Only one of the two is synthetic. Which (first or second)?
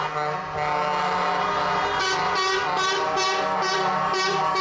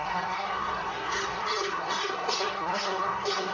second